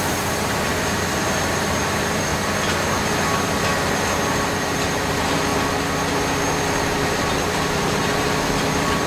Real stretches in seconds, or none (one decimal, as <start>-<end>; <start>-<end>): 2.3-4.1; 5.5-6.3